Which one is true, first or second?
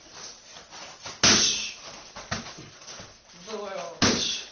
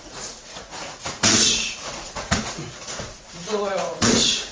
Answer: first